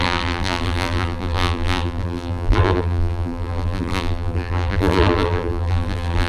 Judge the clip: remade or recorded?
remade